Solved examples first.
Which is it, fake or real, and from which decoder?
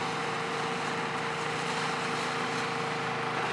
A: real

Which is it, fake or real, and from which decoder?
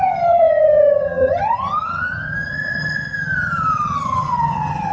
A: fake, vocoder, HiFi-GAN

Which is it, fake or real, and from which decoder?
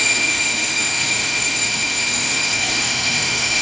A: fake, autoencoder, DAC-VAE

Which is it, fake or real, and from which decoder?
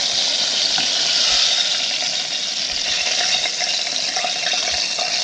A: real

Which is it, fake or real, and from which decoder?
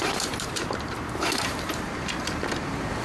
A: fake, vocoder, BigVGAN v2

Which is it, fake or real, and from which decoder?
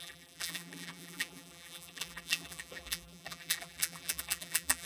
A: fake, vocoder, BigVGAN v2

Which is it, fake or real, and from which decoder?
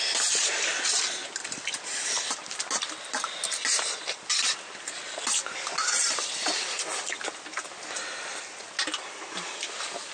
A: real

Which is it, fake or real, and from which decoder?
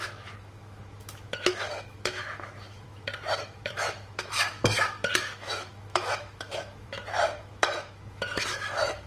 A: fake, autoencoder, DAC-VAE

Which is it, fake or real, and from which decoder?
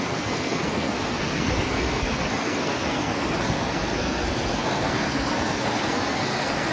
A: fake, codec, SNAC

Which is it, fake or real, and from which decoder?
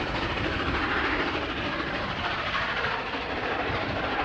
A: fake, vocoder, BigVGAN v2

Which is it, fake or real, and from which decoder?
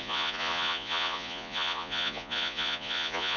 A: fake, vocoder, Vocos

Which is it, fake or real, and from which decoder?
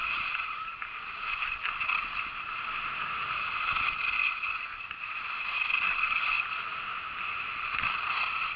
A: real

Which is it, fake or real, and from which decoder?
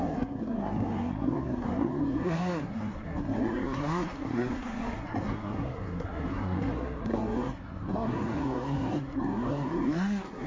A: fake, codec, SNAC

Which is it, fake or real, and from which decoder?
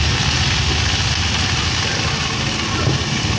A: real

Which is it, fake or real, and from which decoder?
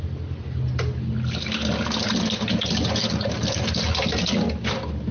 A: real